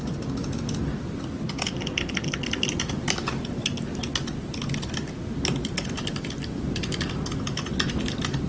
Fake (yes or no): no